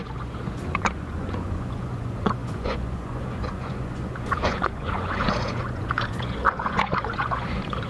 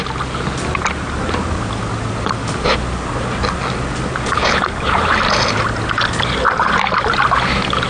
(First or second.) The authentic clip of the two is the second